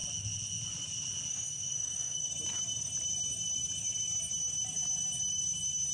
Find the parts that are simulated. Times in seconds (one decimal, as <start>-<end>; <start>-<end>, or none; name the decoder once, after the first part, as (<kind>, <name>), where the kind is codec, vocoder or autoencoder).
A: 1.3-2.3 (autoencoder, DAC-VAE)